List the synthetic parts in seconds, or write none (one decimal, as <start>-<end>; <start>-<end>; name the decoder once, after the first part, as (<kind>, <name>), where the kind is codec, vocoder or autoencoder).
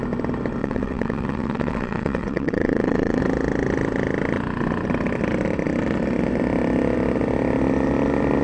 0.6-3.2 (vocoder, WaveNeXt)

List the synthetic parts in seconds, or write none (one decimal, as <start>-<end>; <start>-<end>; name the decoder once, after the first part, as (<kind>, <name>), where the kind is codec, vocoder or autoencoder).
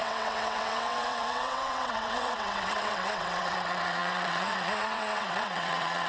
0.0-6.1 (vocoder, WaveNeXt)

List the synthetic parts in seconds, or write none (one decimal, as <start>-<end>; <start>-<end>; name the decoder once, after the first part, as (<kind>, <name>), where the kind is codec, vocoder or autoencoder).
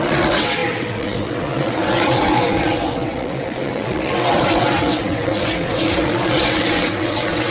0.0-7.5 (vocoder, WaveNeXt)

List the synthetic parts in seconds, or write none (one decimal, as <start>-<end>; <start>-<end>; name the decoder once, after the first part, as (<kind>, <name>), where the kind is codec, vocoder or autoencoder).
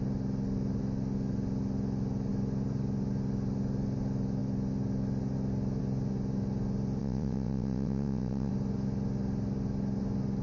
7.0-8.5 (vocoder, WaveNeXt)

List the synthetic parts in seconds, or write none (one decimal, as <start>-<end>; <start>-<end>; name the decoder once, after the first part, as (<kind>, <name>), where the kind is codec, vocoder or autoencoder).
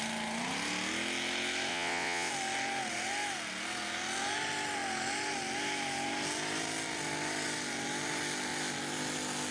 1.7-2.3 (vocoder, WaveNeXt)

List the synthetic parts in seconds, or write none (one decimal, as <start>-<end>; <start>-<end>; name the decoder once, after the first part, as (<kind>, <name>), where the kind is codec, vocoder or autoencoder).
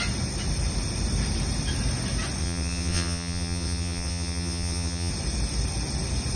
2.4-5.1 (vocoder, WaveNeXt)